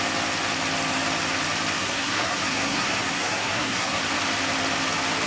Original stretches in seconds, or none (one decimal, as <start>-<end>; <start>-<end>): 0.0-1.8; 4.0-5.3